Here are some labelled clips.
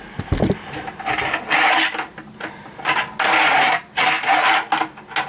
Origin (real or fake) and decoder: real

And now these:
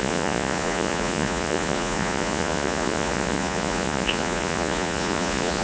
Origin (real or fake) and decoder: fake, vocoder, Vocos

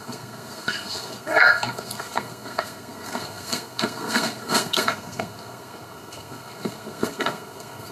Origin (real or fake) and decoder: fake, codec, SNAC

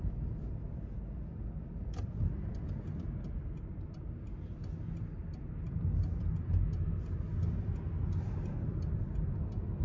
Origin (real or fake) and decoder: real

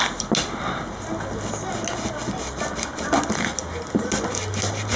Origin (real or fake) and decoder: real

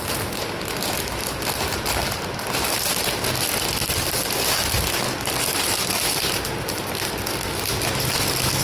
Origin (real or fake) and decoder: real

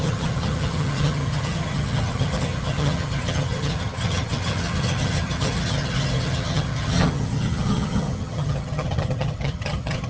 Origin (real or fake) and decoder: fake, vocoder, HiFi-GAN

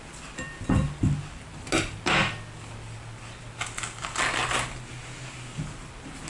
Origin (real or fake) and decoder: real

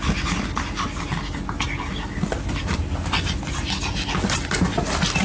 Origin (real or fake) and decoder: real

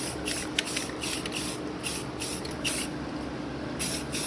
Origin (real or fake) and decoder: real